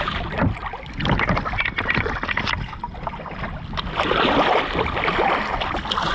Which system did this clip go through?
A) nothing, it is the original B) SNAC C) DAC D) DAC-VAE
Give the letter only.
A